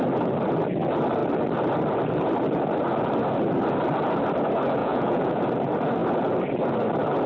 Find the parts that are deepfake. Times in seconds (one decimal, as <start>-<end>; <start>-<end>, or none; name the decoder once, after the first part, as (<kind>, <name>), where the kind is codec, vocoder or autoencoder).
4.8-5.4 (vocoder, Vocos)